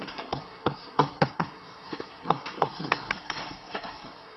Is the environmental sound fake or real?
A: fake